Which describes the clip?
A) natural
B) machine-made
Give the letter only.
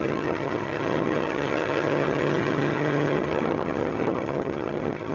B